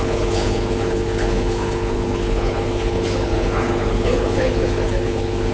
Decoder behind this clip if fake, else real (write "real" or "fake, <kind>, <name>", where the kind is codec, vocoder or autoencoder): fake, codec, HILCodec